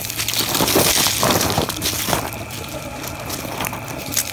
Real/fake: real